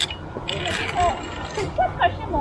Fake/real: real